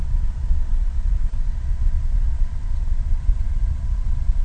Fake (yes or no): yes